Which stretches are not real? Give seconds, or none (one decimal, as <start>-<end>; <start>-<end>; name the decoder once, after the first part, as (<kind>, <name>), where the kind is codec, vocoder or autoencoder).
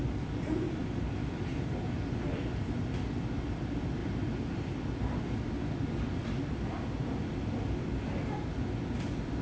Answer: none